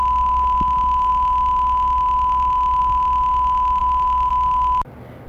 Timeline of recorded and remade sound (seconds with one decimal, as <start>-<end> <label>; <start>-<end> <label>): 0.0-5.3 recorded